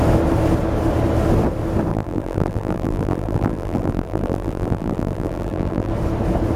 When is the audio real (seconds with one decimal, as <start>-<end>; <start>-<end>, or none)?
0.0-1.9; 5.9-6.6